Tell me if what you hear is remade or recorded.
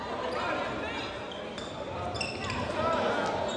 recorded